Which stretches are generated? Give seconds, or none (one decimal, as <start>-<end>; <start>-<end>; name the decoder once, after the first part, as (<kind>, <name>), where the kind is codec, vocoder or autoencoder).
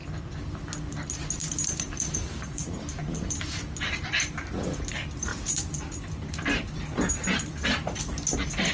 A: 0.0-0.6 (vocoder, BigVGAN v2); 1.4-2.8; 5.3-8.0